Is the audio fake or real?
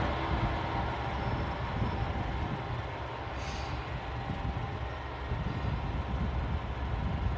real